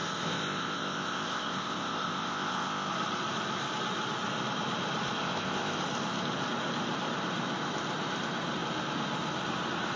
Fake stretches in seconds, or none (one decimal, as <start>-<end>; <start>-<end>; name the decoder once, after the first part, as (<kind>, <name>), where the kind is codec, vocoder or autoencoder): 0.0-2.9 (codec, ZipCodec); 5.2-5.8